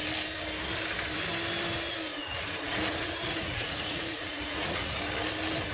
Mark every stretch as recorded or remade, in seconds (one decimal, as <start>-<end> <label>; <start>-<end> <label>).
0.0-2.1 recorded; 2.1-5.0 remade; 5.0-5.7 recorded